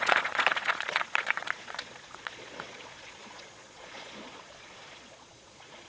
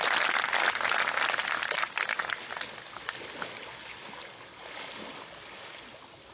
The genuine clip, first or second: second